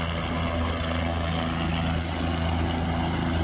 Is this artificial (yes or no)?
no